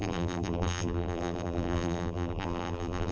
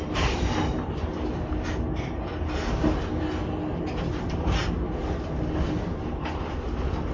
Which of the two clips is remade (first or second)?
first